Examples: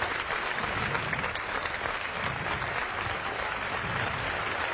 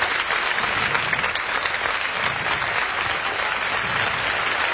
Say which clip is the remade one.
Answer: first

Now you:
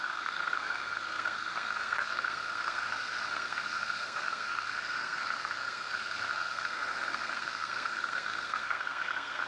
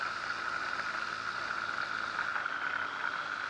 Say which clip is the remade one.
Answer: first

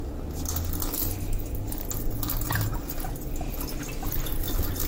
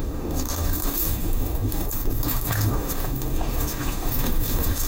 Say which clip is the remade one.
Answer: second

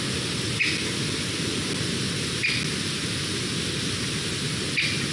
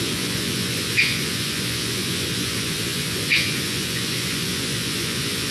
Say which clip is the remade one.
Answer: second